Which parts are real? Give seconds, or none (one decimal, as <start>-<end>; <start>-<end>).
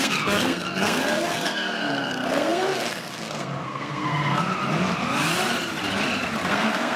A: 4.5-6.5